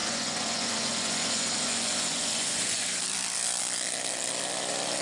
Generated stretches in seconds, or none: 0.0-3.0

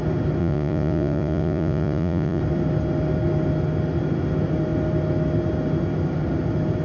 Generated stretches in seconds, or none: 0.4-2.4

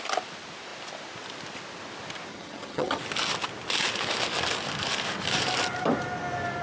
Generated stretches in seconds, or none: 2.3-3.0

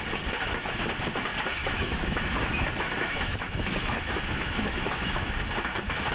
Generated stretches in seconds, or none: 1.6-5.3